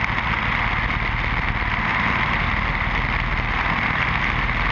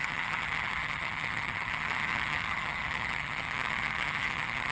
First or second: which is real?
first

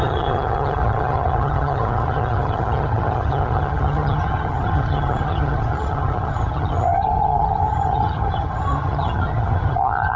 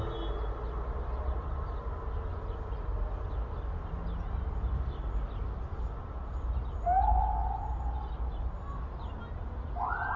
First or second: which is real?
second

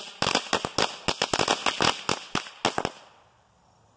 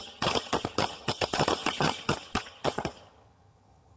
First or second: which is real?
first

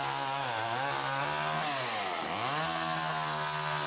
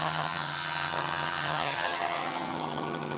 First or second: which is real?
first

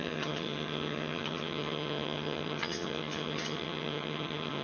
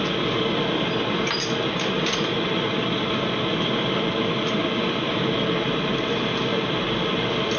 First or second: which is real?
second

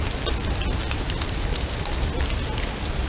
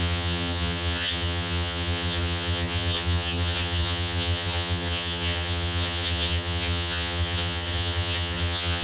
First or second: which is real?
first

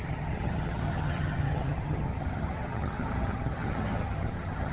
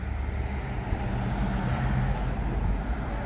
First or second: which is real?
second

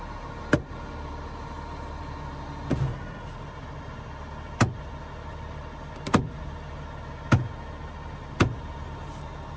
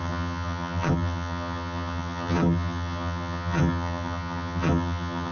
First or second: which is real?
first